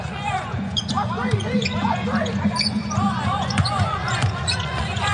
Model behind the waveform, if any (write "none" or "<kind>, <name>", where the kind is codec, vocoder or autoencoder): vocoder, Vocos